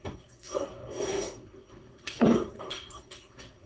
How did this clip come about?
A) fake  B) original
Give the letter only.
A